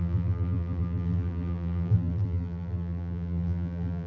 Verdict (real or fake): fake